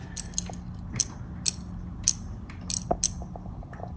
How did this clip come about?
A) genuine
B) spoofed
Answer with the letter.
A